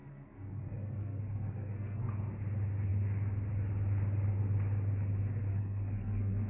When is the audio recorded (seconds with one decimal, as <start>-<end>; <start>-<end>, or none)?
2.1-5.5